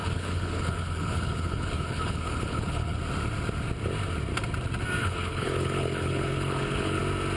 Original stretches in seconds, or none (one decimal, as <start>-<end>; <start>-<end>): 3.0-5.0; 7.0-7.4